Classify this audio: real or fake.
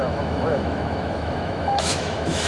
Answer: fake